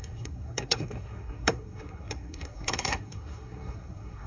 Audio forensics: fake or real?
fake